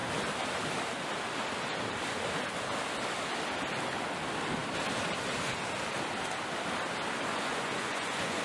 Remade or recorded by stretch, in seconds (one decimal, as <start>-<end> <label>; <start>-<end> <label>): 0.0-7.3 recorded; 7.3-8.4 remade